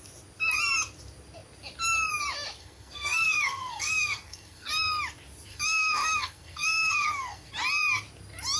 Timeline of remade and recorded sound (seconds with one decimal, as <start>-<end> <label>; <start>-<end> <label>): 0.0-2.6 recorded; 2.6-4.7 remade; 4.7-5.5 recorded; 5.5-7.5 remade; 7.5-8.6 recorded